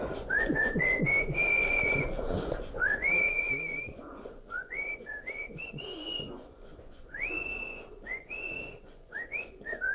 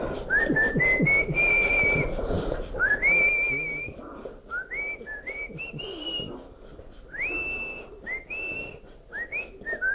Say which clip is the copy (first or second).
first